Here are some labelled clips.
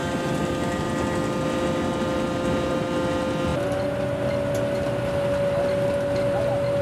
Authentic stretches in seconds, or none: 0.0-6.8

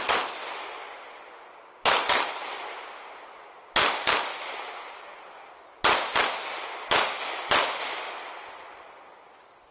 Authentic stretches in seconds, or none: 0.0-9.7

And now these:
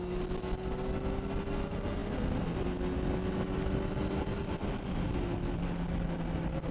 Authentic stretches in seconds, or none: 0.0-6.7

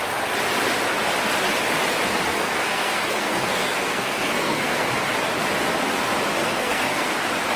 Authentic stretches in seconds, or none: 0.0-2.3; 4.9-6.4; 7.1-7.6

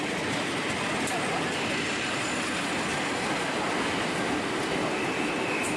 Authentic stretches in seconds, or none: 0.0-5.8

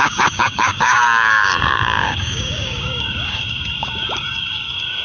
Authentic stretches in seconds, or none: none